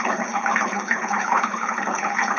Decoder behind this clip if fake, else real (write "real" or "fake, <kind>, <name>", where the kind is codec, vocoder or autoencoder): fake, codec, HILCodec